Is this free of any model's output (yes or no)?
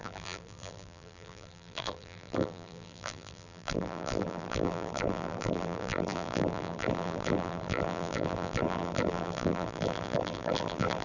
no